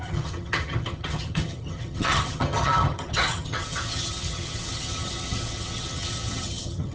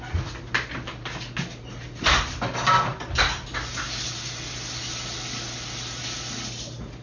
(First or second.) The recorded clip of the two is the second